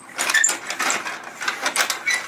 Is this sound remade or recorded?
recorded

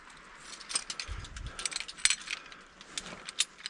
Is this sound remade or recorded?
recorded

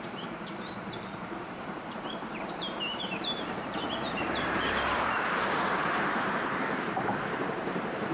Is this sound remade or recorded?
remade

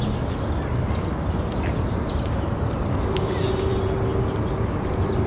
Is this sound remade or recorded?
recorded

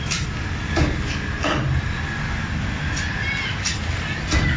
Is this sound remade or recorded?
remade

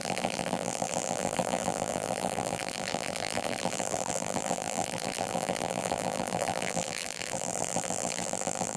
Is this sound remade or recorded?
remade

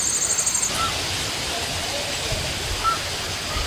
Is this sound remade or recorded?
recorded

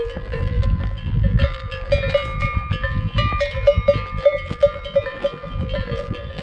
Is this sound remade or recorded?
remade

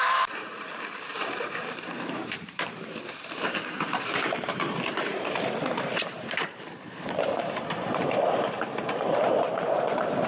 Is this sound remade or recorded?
remade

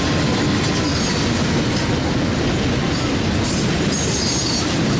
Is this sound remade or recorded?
recorded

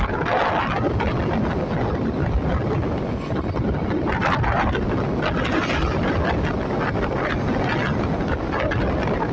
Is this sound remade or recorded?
recorded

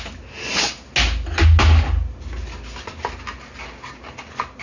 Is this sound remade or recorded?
recorded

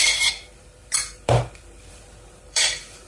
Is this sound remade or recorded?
remade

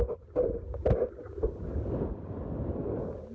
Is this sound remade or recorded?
recorded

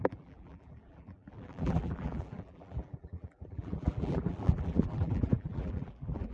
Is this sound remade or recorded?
remade